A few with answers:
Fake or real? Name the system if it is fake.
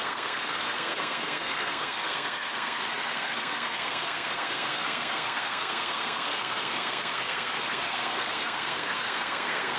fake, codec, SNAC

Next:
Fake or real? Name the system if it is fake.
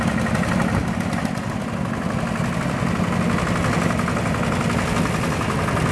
real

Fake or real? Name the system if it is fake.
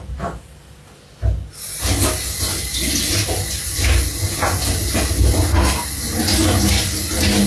real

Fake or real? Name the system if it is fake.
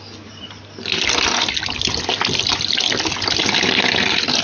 real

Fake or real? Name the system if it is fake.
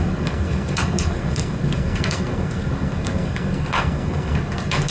fake, codec, SNAC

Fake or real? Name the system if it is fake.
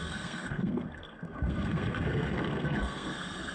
fake, codec, SNAC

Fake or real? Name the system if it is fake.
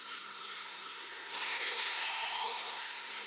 fake, codec, SNAC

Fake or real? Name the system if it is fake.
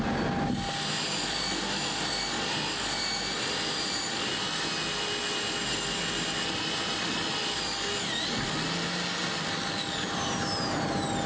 real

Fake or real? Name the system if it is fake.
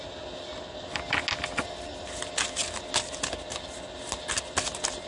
real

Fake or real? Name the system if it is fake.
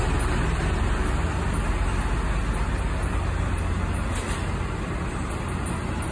real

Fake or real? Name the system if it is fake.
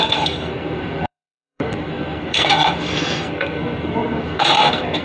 fake, codec, SNAC